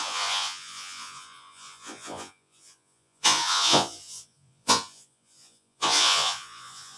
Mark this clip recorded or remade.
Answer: remade